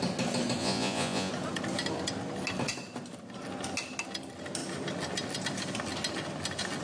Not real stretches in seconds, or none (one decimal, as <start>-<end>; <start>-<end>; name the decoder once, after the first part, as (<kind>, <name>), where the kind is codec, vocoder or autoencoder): 0.6-1.3 (vocoder, Vocos)

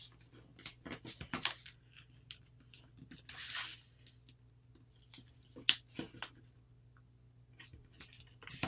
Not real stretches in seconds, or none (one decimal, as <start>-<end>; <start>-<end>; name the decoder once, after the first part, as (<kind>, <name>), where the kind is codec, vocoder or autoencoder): none